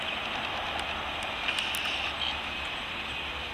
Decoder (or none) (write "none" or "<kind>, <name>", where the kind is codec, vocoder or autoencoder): none